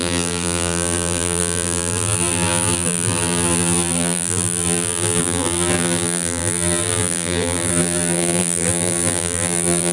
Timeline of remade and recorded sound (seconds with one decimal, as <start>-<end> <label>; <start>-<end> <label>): 0.0-9.9 remade